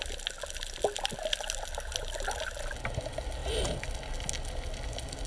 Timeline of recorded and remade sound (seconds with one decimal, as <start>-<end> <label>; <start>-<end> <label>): 0.0-5.3 recorded